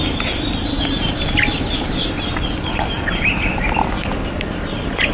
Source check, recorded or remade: recorded